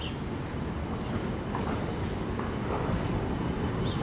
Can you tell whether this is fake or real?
real